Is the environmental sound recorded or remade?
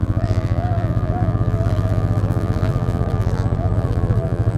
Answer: remade